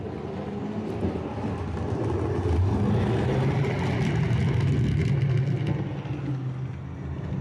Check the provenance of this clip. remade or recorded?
recorded